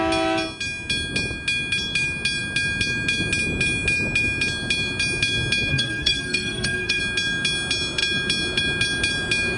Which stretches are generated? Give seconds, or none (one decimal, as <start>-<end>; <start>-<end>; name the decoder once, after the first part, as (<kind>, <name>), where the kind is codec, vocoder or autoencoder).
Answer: 5.7-7.0 (codec, SNAC)